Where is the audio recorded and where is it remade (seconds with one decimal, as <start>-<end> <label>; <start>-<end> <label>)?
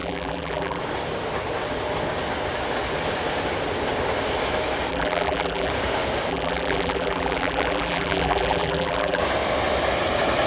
0.0-0.8 remade; 0.8-4.9 recorded; 4.9-5.7 remade; 5.7-6.3 recorded; 6.3-9.2 remade; 9.2-10.5 recorded